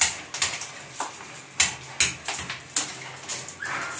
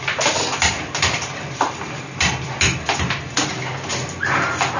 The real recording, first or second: first